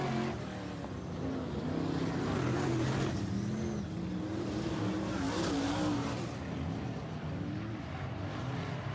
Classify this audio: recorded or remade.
recorded